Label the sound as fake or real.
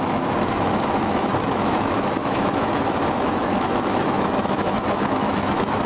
fake